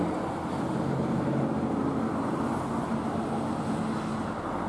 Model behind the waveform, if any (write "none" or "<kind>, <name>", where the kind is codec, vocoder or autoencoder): none